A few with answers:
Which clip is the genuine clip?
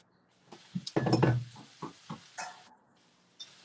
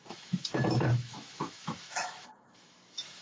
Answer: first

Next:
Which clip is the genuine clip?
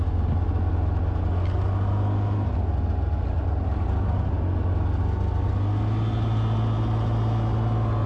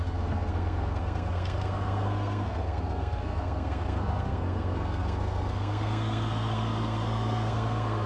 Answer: first